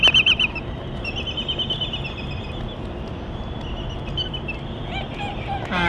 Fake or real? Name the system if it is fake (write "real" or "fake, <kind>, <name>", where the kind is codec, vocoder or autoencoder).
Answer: real